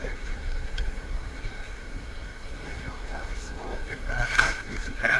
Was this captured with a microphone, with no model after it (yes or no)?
no